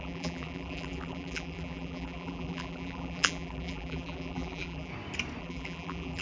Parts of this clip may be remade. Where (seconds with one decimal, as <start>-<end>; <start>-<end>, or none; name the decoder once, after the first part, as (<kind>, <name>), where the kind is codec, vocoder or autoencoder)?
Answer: 0.0-4.9 (vocoder, BigVGAN v2); 5.4-6.2